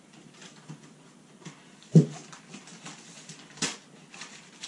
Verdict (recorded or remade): recorded